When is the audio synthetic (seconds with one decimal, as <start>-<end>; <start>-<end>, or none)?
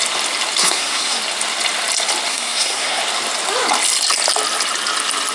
0.6-1.2; 2.3-3.0